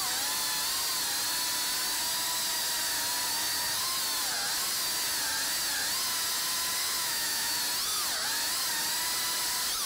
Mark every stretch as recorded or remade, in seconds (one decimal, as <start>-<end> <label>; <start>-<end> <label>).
0.0-6.8 recorded; 6.8-7.6 remade; 7.6-9.9 recorded